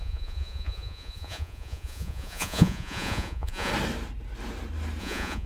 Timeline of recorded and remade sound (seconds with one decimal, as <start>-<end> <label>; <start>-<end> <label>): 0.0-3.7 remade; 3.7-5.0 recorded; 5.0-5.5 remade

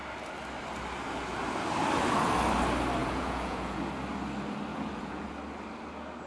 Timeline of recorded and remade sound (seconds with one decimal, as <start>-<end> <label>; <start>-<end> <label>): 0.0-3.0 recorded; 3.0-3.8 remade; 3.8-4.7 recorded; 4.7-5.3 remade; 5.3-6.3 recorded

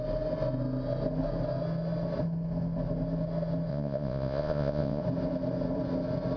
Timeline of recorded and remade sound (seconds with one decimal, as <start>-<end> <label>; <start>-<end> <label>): 0.0-3.7 recorded; 3.7-5.0 remade; 5.0-6.4 recorded

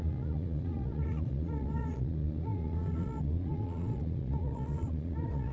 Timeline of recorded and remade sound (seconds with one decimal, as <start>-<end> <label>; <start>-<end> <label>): 0.0-5.5 remade

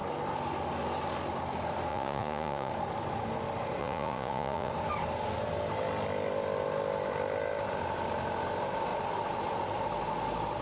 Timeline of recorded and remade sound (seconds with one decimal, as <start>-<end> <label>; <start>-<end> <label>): 0.0-1.9 recorded; 1.9-2.7 remade; 2.7-3.8 recorded; 3.8-4.7 remade; 4.7-10.6 recorded

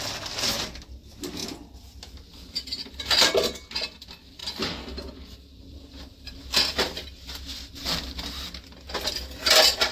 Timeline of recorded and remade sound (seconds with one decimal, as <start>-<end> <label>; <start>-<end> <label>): 0.0-9.9 recorded

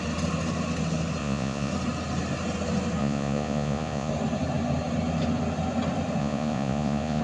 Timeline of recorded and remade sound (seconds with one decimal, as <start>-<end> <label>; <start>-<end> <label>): 0.0-1.2 recorded; 1.2-1.7 remade; 1.7-3.0 recorded; 3.0-4.1 remade; 4.1-6.2 recorded; 6.2-7.2 remade